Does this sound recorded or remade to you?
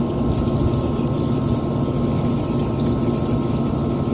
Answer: recorded